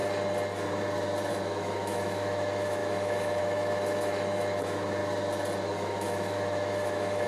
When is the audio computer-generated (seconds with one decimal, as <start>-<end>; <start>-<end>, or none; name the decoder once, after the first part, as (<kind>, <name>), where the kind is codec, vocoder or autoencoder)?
1.3-5.0 (autoencoder, DAC-VAE); 5.7-7.3